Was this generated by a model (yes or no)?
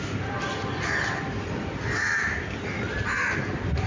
no